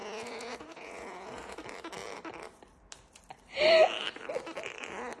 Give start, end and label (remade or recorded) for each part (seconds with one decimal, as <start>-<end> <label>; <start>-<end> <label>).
0.0-1.6 remade; 1.6-5.2 recorded